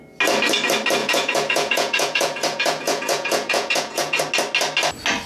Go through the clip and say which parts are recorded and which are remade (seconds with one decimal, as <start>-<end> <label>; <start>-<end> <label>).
0.0-1.0 recorded; 1.0-4.2 remade; 4.2-5.3 recorded